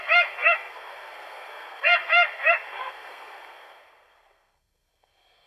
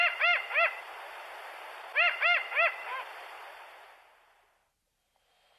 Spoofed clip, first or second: first